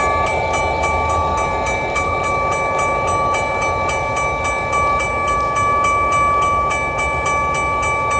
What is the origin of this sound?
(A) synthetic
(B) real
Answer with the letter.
B